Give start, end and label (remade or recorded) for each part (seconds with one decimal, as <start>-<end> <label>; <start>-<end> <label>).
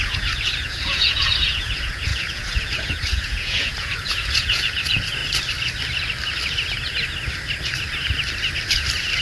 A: 0.0-5.2 remade; 5.2-9.2 recorded